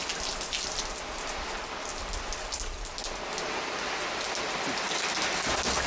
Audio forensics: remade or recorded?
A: recorded